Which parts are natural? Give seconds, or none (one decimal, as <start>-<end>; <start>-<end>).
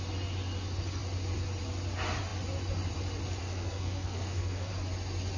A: 0.0-3.4; 4.7-5.4